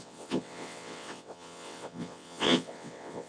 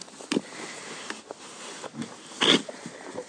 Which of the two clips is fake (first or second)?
first